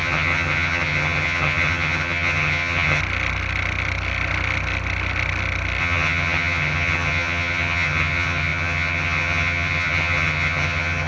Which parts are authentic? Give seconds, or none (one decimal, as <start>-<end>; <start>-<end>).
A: 3.0-5.8